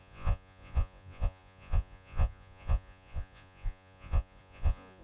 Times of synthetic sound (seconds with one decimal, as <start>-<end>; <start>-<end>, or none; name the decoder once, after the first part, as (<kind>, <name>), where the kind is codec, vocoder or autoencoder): 0.0-5.0 (vocoder, Vocos)